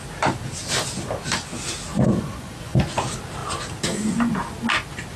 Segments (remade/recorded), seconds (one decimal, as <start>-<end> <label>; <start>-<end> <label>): 0.0-1.9 recorded; 1.9-3.0 remade; 3.0-5.2 recorded